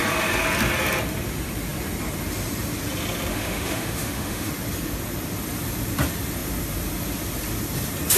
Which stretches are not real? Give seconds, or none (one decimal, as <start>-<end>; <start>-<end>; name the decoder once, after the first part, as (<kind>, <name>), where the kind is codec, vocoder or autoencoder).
3.3-4.5 (autoencoder, DAC-VAE)